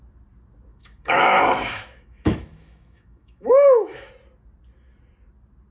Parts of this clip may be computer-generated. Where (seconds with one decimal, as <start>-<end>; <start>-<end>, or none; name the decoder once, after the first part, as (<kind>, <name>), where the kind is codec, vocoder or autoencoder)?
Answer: 0.7-4.1 (autoencoder, DAC-VAE)